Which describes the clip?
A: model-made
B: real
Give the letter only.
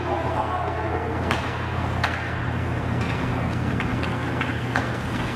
A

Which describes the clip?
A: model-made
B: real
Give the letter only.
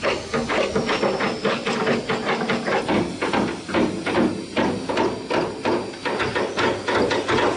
B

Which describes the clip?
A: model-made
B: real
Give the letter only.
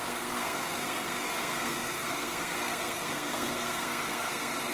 A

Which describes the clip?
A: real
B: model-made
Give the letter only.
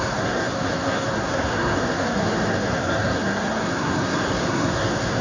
B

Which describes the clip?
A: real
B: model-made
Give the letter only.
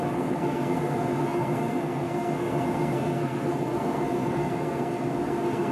B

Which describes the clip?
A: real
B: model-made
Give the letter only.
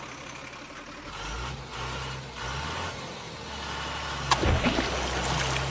A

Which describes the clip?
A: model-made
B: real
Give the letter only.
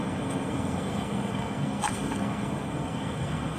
A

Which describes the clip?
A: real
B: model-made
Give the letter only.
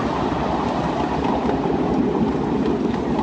A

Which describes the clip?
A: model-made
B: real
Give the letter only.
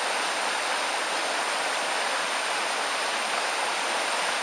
B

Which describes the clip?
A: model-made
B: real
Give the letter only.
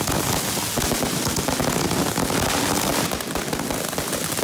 B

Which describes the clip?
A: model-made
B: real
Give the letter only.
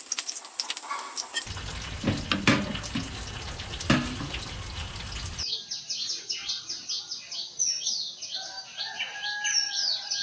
B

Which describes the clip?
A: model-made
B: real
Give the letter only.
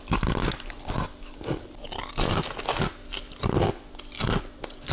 B